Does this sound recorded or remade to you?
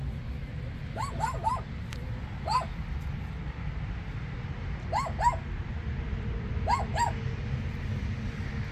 recorded